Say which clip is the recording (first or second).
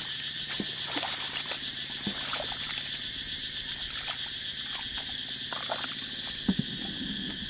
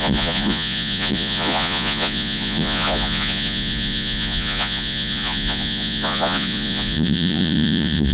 first